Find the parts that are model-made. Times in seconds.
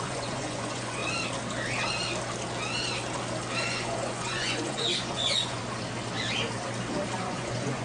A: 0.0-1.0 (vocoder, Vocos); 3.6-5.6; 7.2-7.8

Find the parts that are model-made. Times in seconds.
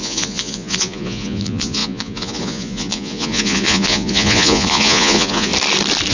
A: 0.0-5.5 (vocoder, Vocos)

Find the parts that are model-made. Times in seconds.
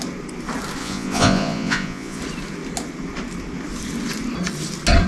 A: 0.8-2.2 (vocoder, Vocos)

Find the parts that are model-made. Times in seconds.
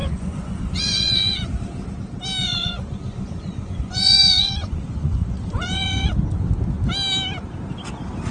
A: 0.0-1.5 (vocoder, Vocos); 2.4-6.1